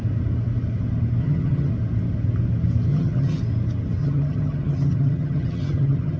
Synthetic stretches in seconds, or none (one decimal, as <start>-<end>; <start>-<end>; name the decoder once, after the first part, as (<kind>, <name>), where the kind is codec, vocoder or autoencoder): 1.2-1.7 (vocoder, HiFi-GAN); 2.9-3.4; 4.0-6.2